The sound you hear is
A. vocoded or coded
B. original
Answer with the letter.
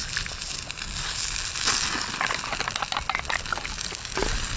B